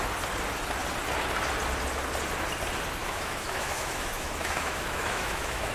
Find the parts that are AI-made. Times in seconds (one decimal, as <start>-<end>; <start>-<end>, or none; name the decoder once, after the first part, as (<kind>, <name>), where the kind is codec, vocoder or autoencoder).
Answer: 3.0-5.7 (autoencoder, DAC-VAE)